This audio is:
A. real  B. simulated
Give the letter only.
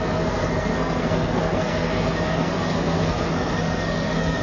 B